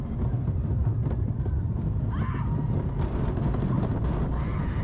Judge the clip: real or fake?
real